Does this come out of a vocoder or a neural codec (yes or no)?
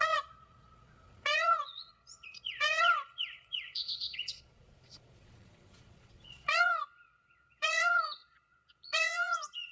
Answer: yes